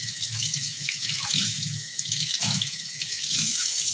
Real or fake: fake